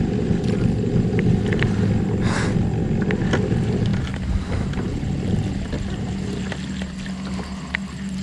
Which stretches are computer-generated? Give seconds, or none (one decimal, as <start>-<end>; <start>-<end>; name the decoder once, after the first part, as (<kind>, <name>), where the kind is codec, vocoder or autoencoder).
none